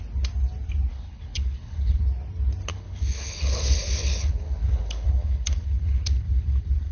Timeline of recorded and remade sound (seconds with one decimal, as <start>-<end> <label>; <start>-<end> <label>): 0.0-0.9 recorded; 0.9-2.0 remade; 2.0-2.7 recorded; 2.7-6.9 remade